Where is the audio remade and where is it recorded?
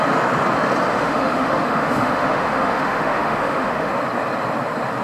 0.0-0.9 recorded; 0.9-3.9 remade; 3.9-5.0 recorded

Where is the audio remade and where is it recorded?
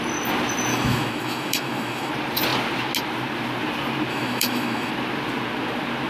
0.0-0.7 recorded; 0.7-2.1 remade; 2.1-4.1 recorded; 4.1-4.9 remade; 4.9-6.1 recorded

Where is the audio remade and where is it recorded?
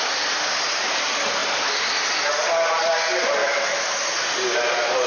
0.0-3.4 recorded; 3.4-4.0 remade; 4.0-5.1 recorded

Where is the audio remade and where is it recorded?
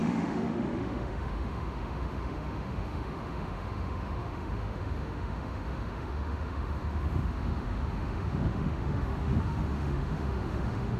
0.0-11.0 remade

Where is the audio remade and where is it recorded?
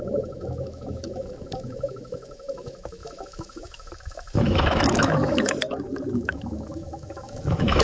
0.0-7.8 remade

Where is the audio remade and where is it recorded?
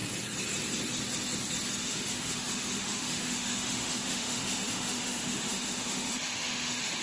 0.0-1.8 recorded; 1.8-7.0 remade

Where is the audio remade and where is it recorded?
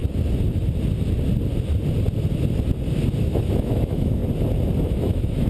0.0-3.2 recorded; 3.2-4.2 remade; 4.2-4.8 recorded; 4.8-5.5 remade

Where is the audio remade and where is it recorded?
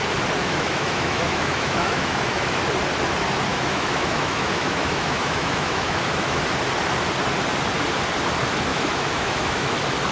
0.0-0.4 recorded; 0.4-2.6 remade; 2.6-3.5 recorded; 3.5-6.4 remade; 6.4-8.7 recorded; 8.7-9.7 remade; 9.7-10.1 recorded